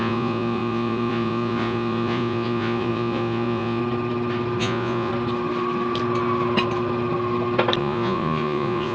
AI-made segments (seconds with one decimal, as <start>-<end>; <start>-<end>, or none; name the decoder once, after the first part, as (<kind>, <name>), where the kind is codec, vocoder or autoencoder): 0.0-3.8 (vocoder, Vocos); 4.6-5.1; 7.8-8.9